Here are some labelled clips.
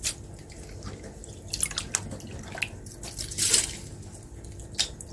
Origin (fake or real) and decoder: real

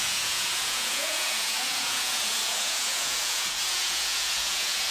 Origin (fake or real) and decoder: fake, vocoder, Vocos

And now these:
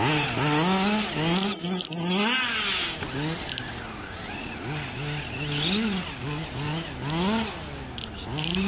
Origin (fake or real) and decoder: real